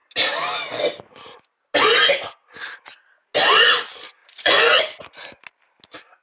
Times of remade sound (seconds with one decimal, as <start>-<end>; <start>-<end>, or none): 4.2-4.8

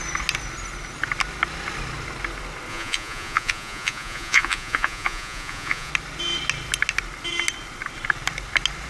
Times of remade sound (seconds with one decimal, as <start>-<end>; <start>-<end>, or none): 2.7-5.9

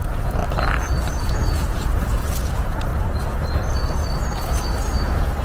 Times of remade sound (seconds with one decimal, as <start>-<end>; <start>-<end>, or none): 0.0-0.4; 1.2-2.9; 5.0-5.4

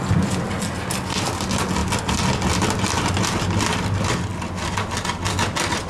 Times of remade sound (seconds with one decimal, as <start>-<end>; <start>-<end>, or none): none

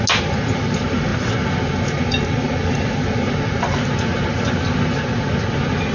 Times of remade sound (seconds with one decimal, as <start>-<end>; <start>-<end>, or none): none

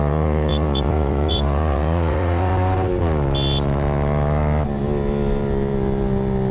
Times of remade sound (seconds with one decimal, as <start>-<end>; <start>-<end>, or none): 0.0-2.5

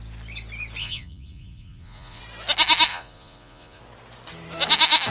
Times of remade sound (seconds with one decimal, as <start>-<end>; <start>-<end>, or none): 0.8-2.2; 2.9-3.8